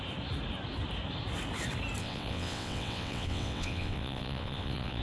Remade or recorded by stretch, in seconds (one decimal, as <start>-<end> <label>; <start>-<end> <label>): 0.0-2.0 recorded; 2.0-5.0 remade

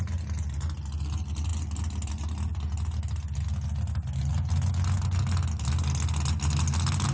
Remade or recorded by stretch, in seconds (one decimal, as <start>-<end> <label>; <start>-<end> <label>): 0.0-7.1 recorded

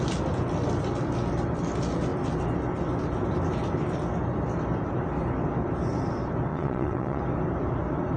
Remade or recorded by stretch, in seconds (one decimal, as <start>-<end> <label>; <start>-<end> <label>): 0.0-6.5 recorded; 6.5-7.2 remade; 7.2-8.2 recorded

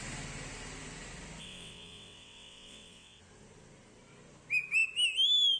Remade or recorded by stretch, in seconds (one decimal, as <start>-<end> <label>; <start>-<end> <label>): 0.0-1.4 recorded; 1.4-3.2 remade; 3.2-5.6 recorded

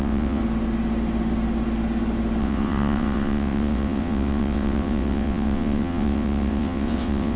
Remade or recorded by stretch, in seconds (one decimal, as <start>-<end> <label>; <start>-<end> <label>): 0.0-0.4 remade; 0.4-2.4 recorded; 2.4-7.4 remade

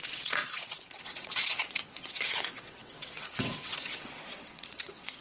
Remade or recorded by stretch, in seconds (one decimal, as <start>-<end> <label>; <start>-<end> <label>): 0.0-5.2 remade

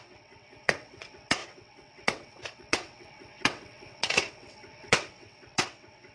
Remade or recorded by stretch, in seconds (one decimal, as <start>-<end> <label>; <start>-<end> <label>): 0.0-6.1 remade

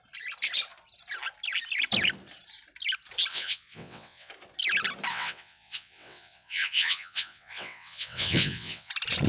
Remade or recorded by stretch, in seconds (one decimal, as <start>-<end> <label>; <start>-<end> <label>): 0.0-3.3 recorded; 3.3-4.3 remade; 4.3-5.1 recorded; 5.1-8.9 remade; 8.9-9.3 recorded